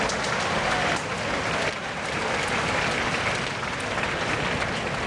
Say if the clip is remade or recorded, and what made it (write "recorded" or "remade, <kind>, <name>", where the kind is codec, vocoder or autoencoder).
recorded